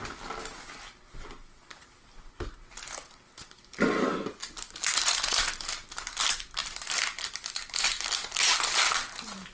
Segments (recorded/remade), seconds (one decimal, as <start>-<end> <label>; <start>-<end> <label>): 0.0-1.4 recorded; 1.4-2.5 remade; 2.5-6.6 recorded; 6.6-7.5 remade; 7.5-7.9 recorded; 7.9-8.5 remade; 8.5-9.5 recorded